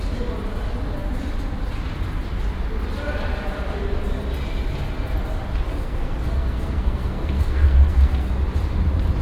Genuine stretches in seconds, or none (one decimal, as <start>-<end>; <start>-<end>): 0.0-5.7; 8.3-9.2